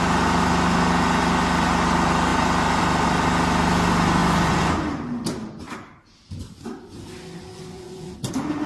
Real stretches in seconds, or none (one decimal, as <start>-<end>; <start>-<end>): 0.0-4.2; 5.0-7.5; 8.1-8.7